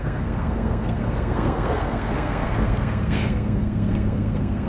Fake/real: fake